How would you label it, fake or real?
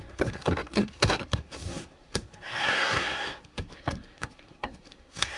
fake